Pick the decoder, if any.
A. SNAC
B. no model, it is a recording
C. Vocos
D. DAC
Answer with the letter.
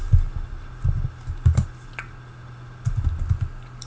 B